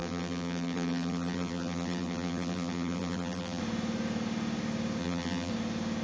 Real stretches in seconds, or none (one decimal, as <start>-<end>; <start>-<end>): 3.6-5.0; 5.5-6.0